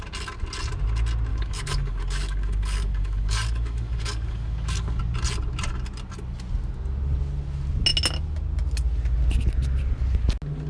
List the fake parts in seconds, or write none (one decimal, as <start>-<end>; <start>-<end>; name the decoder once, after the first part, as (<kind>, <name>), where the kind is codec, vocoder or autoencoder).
1.3-5.0 (codec, DAC)